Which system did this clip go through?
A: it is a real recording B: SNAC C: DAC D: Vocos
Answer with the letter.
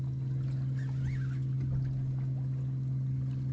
A